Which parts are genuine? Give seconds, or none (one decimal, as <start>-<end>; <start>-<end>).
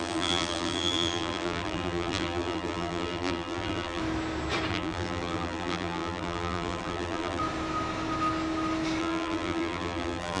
4.0-4.7; 7.4-9.0